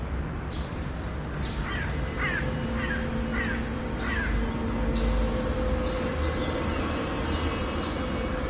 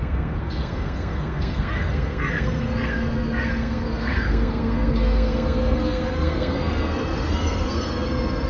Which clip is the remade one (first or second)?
second